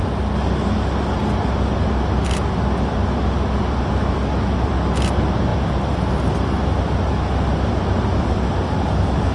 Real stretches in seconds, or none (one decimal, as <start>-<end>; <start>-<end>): 0.0-9.3